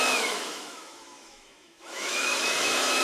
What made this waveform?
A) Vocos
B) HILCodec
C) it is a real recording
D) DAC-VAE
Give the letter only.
D